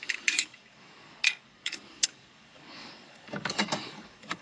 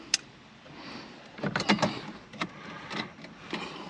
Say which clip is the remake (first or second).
first